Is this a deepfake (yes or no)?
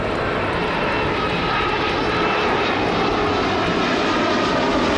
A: no